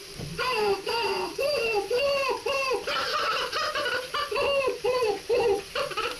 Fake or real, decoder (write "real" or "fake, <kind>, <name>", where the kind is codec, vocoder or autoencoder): fake, vocoder, BigVGAN v2